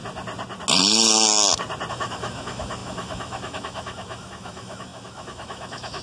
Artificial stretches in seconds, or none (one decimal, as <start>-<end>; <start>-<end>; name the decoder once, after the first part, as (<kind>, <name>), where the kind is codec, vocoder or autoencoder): 1.9-6.0 (autoencoder, DAC-VAE)